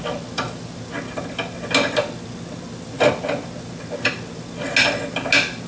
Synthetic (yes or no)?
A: no